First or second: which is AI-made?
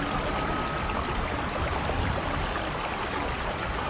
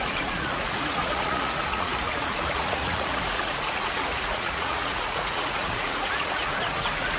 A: second